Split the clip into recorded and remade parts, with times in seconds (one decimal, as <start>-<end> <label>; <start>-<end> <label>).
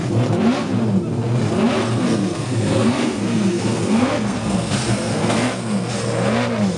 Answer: 0.0-1.8 recorded; 1.8-5.9 remade; 5.9-6.8 recorded